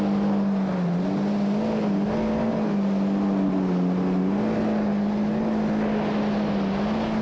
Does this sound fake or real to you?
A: real